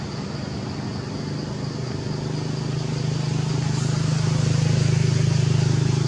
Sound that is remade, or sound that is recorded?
recorded